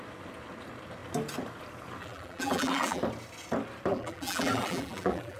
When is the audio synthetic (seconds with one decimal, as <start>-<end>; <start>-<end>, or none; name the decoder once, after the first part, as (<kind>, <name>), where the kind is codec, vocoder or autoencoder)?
2.0-3.0 (vocoder, BigVGAN v2); 3.9-5.4